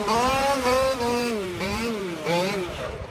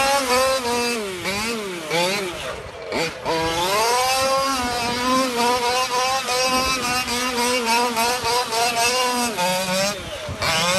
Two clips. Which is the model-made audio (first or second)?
first